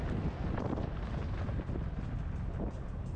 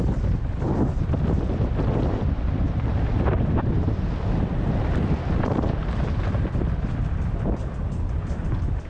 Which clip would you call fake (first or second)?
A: second